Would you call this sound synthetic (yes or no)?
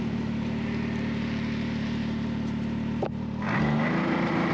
no